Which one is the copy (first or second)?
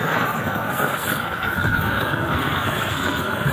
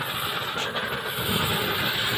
first